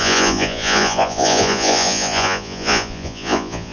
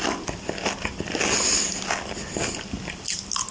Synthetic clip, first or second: first